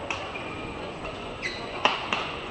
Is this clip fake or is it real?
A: fake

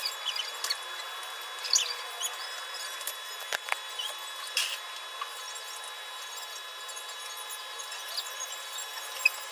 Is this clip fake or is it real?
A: real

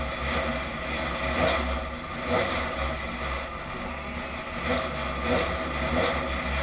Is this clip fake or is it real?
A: real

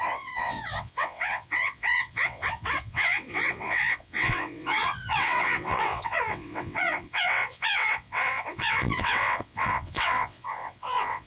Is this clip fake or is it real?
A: fake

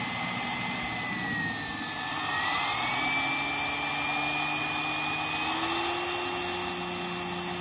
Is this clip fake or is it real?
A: real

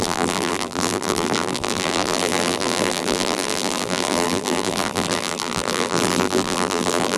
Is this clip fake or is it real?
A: fake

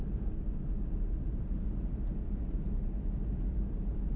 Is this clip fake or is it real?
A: real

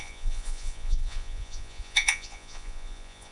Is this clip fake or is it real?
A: fake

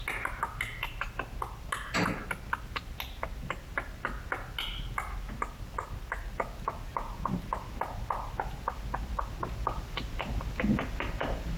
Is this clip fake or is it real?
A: real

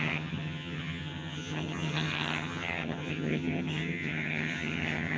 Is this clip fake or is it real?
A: fake